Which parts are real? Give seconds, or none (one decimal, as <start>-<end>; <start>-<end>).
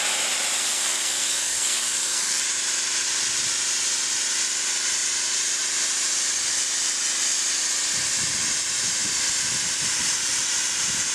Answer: 0.0-0.6; 2.4-11.1